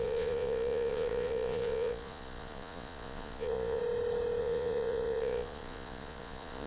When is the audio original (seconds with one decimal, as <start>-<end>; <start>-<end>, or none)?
3.8-4.4